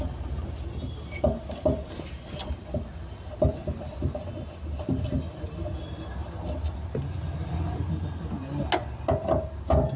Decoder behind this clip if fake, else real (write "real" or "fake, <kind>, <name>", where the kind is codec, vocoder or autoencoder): real